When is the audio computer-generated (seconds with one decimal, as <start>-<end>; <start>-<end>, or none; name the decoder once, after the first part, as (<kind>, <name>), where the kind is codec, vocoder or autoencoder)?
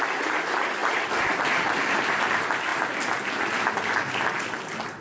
none